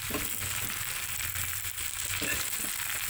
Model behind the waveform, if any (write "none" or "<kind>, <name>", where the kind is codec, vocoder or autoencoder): none